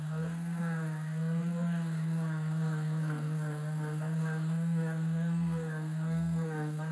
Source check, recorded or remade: remade